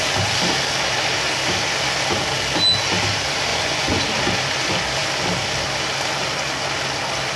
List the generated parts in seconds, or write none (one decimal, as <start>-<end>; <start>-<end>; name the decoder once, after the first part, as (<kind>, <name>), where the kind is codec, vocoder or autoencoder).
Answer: 3.5-4.0 (vocoder, Vocos)